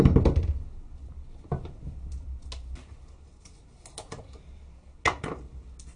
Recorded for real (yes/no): yes